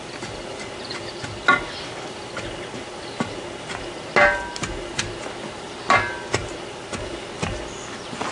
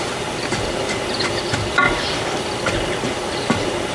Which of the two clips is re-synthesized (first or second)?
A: second